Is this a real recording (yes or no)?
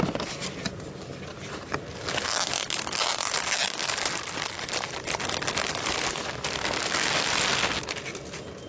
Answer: yes